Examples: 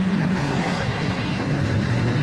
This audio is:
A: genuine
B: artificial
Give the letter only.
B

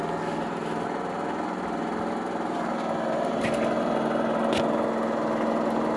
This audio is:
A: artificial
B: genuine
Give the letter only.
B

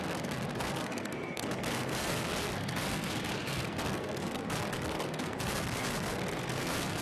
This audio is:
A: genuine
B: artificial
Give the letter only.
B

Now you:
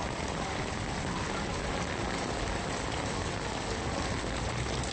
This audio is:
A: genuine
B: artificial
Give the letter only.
A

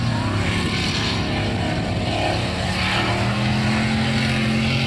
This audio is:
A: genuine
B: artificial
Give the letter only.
A